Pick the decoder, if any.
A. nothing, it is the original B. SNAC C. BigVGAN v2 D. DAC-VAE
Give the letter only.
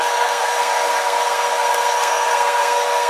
B